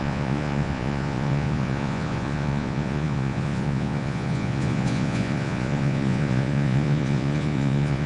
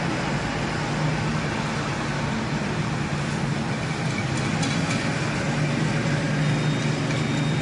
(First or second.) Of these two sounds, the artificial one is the first